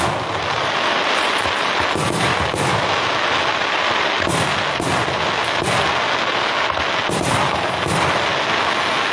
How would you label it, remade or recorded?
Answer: recorded